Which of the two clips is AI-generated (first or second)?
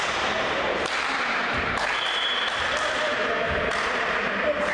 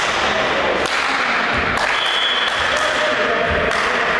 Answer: first